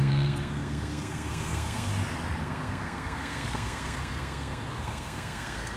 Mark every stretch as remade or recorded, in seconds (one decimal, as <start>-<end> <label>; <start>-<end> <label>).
0.0-1.9 remade; 1.9-2.4 recorded; 2.4-5.8 remade